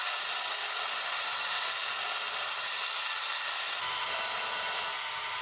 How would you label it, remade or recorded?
recorded